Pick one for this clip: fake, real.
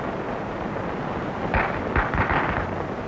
real